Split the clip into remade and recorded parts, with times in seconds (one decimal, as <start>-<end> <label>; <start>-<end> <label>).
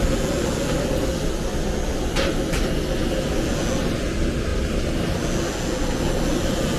0.0-6.8 recorded